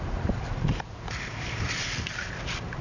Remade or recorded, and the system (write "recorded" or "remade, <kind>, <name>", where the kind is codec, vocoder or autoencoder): remade, vocoder, BigVGAN v2